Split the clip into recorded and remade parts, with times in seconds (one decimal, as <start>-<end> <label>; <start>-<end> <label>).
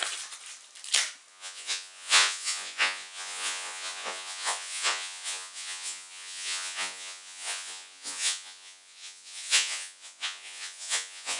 0.0-1.3 recorded; 1.3-11.4 remade